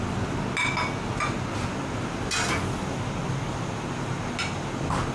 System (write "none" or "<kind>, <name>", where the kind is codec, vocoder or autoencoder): none